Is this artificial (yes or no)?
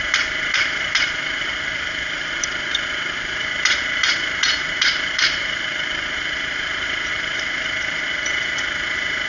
yes